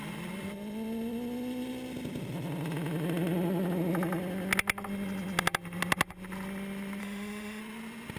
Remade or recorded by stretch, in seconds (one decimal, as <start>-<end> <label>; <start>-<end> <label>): 0.0-7.0 recorded; 7.0-7.6 remade; 7.6-8.2 recorded